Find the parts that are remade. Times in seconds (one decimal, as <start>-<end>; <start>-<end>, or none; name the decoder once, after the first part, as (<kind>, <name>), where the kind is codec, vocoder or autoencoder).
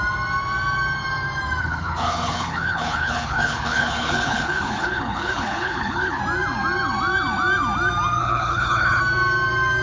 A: 1.6-6.2 (codec, HILCodec); 8.2-9.0